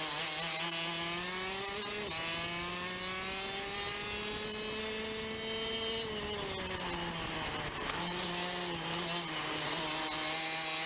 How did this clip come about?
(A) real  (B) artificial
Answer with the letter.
A